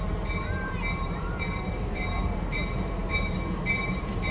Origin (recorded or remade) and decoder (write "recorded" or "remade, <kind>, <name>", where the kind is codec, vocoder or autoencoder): remade, vocoder, BigVGAN v2